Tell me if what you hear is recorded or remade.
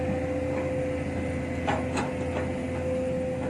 recorded